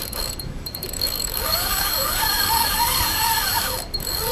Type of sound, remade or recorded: remade